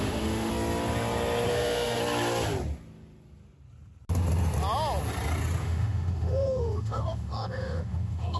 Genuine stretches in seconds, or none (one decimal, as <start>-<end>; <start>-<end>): 0.5-1.5; 2.0-5.6